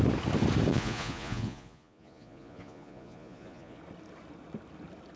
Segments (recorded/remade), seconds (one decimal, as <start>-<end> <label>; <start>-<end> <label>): 0.0-0.7 recorded; 0.7-3.8 remade; 3.8-5.2 recorded